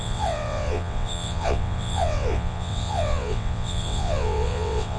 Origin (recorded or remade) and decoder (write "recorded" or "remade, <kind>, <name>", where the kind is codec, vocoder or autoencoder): remade, vocoder, WaveNeXt